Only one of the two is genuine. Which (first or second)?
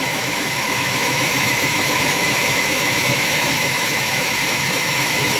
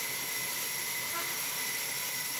second